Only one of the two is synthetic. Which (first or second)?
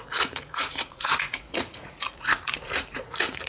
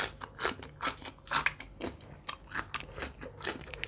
first